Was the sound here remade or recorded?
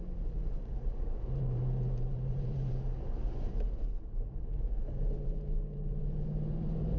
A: remade